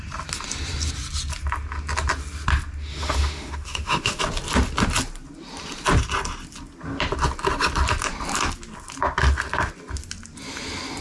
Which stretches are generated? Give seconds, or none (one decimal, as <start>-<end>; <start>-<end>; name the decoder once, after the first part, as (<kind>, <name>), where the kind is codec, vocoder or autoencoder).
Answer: 2.8-4.2 (autoencoder, DAC-VAE)